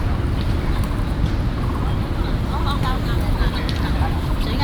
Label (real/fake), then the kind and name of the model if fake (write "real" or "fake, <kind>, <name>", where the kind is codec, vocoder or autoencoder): real